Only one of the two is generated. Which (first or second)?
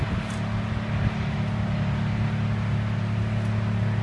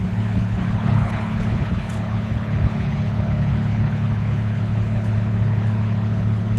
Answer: second